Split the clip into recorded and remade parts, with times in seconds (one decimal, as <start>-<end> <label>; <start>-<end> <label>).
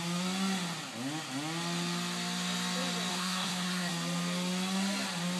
0.0-3.1 recorded; 3.1-3.9 remade; 3.9-5.4 recorded